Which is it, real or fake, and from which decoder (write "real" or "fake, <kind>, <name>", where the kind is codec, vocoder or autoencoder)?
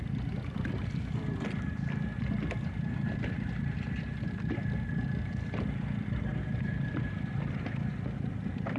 real